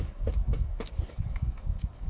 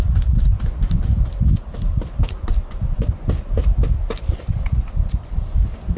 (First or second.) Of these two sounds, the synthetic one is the first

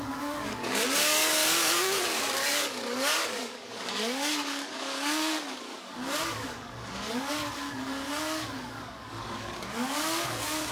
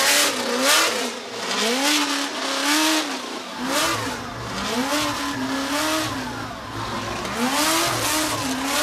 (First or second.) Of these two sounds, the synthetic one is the first